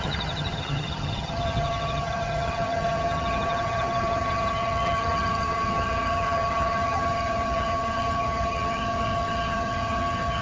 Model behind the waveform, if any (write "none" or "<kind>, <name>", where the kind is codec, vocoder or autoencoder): vocoder, HiFi-GAN